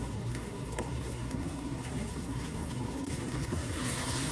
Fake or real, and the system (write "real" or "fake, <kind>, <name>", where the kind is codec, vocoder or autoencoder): fake, codec, SNAC